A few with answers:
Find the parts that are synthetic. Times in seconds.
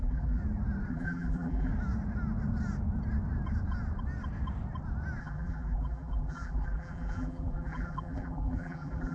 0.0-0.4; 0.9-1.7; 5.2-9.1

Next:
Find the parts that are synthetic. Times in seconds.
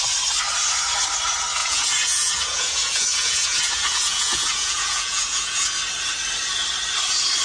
1.6-5.8